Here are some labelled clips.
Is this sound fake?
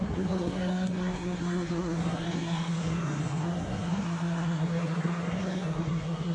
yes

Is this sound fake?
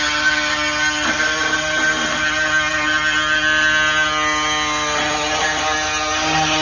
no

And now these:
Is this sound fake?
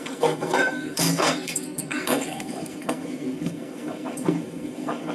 yes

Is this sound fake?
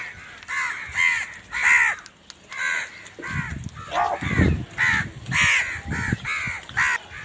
no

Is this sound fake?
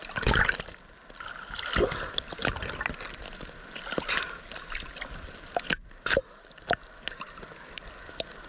no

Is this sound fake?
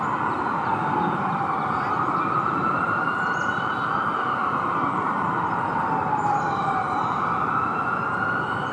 no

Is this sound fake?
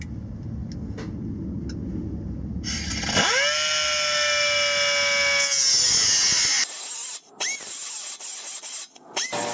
no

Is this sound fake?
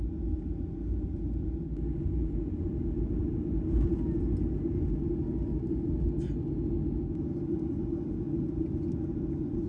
no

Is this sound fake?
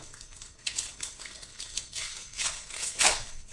yes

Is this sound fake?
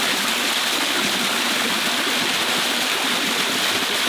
no